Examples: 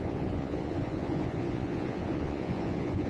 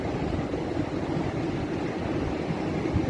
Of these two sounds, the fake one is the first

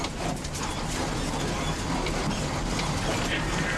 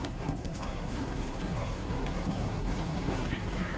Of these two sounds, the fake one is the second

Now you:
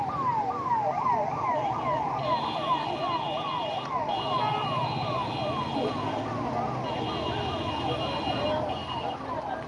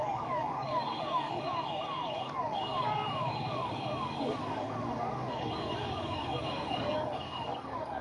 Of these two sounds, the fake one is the second